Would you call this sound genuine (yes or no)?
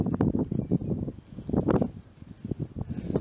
yes